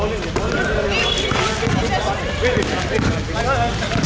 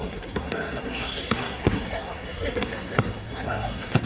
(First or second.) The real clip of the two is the first